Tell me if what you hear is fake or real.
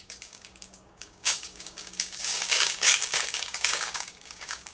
fake